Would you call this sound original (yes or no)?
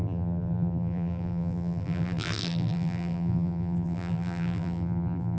no